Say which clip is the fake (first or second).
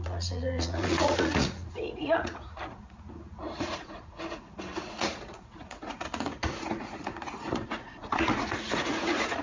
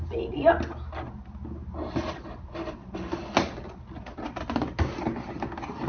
first